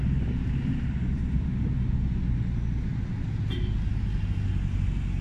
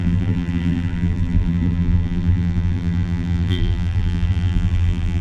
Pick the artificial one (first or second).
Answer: second